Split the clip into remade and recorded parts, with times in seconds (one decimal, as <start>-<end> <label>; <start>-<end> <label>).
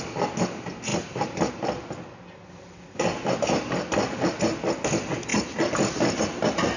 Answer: 0.0-0.9 recorded; 0.9-1.5 remade; 1.5-6.8 recorded